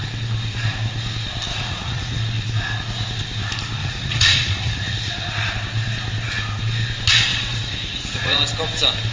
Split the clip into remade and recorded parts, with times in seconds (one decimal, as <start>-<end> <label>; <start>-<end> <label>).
0.0-1.5 recorded; 1.5-2.2 remade; 2.2-3.8 recorded; 3.8-5.5 remade; 5.5-7.3 recorded; 7.3-8.4 remade; 8.4-9.1 recorded